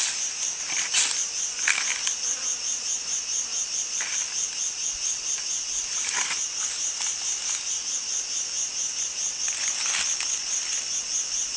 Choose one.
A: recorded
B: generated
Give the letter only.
A